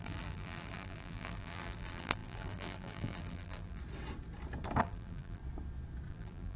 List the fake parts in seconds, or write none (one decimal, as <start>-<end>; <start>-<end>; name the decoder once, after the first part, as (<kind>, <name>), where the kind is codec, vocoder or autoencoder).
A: 0.0-3.8 (vocoder, BigVGAN v2); 4.8-5.4; 6.1-6.6

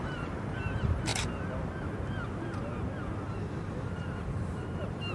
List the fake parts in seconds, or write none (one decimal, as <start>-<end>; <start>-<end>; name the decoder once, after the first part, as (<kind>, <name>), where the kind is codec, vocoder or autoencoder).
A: 0.0-1.1 (vocoder, BigVGAN v2); 4.2-5.1

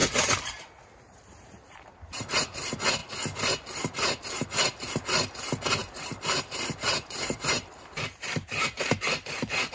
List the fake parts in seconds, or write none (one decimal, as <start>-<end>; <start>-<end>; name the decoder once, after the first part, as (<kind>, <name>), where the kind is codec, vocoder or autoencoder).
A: 0.0-2.4 (vocoder, BigVGAN v2); 5.8-9.7

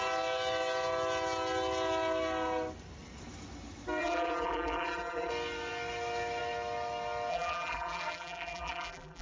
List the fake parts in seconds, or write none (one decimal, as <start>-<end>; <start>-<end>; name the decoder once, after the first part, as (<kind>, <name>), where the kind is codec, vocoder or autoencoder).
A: 4.0-5.3 (vocoder, BigVGAN v2); 7.3-9.2

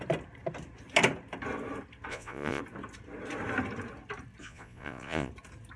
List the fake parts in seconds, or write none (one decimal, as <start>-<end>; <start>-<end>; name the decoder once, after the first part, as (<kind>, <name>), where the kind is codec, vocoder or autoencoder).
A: 2.1-2.6 (vocoder, Vocos); 4.4-5.3